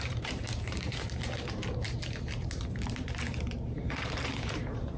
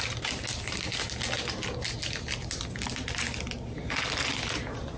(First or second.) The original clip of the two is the second